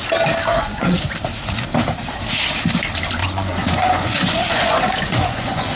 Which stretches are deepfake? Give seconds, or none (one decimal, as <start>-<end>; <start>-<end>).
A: 0.5-1.1; 3.2-5.8

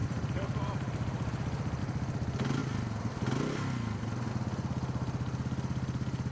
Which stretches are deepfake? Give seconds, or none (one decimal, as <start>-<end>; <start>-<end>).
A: 0.0-1.8

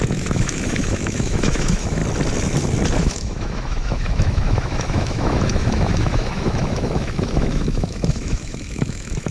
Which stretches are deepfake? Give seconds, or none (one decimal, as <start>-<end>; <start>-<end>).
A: 0.0-2.0; 3.0-9.3

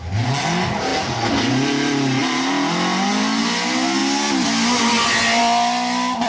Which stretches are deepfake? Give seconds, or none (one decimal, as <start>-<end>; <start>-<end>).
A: none

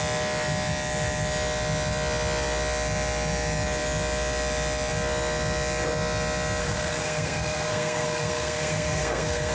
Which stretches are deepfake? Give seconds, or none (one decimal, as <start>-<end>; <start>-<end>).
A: 6.6-9.5

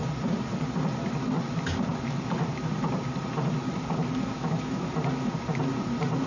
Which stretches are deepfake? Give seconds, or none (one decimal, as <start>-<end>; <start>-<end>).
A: 4.3-4.9